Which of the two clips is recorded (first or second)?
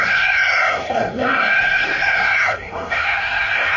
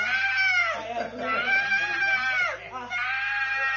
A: second